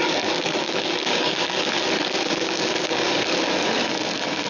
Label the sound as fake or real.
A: fake